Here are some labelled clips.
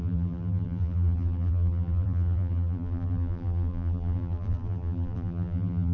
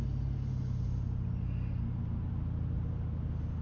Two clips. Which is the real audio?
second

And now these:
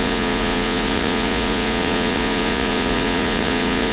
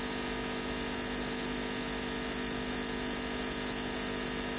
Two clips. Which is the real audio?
second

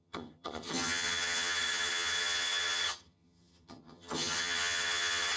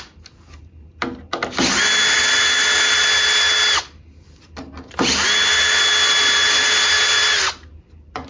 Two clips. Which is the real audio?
second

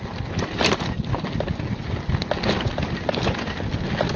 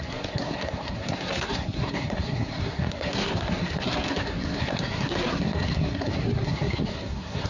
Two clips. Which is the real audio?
first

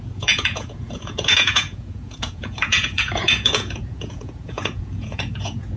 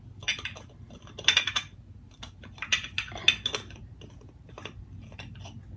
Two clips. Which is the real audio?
second